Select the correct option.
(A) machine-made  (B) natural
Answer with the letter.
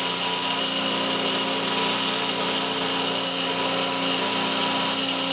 B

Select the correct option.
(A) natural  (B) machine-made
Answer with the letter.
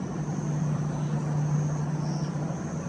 A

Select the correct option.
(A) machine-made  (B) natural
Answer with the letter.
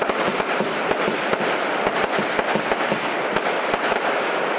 B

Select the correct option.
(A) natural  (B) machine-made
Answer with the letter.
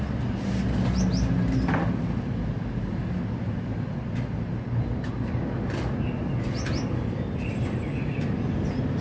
A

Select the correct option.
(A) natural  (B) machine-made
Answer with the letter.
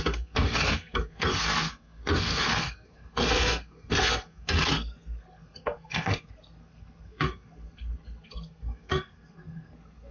B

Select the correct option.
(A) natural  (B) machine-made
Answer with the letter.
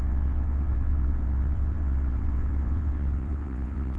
B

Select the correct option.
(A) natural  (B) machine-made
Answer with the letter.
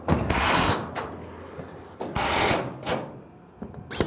A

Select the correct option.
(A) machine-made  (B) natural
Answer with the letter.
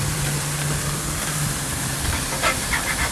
A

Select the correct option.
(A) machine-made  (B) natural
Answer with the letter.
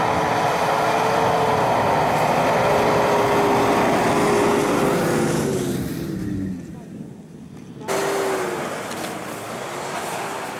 B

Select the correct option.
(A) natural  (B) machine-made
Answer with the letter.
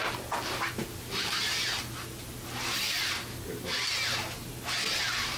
A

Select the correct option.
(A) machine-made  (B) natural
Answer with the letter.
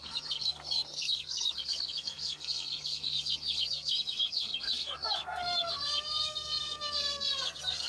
A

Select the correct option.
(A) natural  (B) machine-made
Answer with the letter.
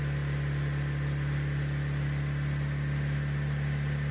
A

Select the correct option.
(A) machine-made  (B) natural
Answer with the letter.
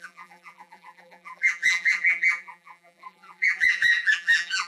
A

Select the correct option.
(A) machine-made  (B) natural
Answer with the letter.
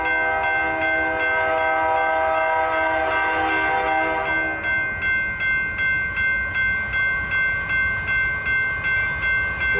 B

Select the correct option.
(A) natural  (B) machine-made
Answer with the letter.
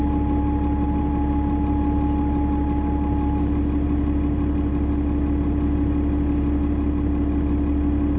A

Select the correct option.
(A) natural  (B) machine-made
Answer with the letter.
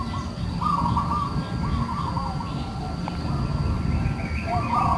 A